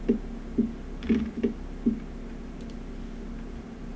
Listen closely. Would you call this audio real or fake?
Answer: real